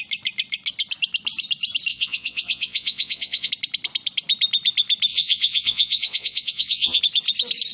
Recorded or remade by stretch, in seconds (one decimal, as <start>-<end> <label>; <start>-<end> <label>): 0.0-1.9 recorded; 1.9-3.5 remade; 3.5-5.1 recorded; 5.1-7.0 remade; 7.0-7.7 recorded